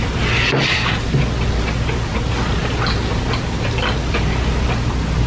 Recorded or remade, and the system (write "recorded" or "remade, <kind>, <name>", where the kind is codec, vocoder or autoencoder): recorded